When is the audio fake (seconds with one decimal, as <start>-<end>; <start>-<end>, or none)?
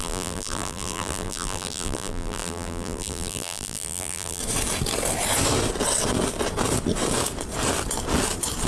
0.0-4.4